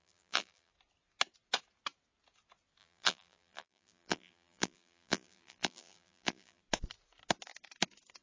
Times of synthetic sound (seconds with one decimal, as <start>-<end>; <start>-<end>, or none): 0.0-0.7; 2.8-6.6